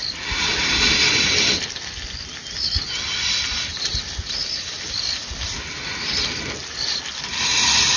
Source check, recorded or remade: recorded